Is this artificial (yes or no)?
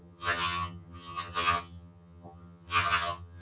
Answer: yes